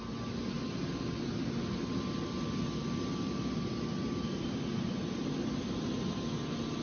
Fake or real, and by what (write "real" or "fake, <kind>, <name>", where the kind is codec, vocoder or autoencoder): real